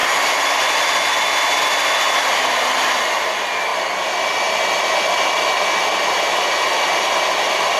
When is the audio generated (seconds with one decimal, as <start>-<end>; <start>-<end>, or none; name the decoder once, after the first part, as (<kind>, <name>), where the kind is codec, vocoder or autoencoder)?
none